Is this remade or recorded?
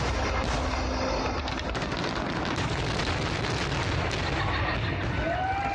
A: recorded